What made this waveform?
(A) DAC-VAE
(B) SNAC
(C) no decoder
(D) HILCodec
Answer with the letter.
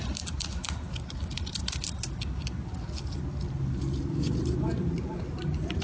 C